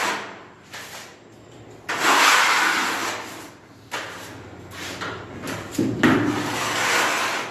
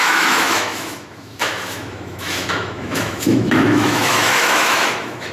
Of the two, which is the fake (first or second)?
second